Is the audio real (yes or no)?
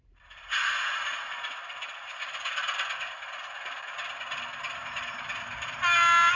yes